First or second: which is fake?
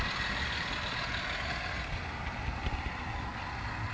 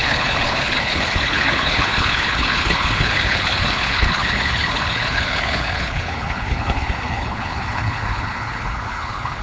second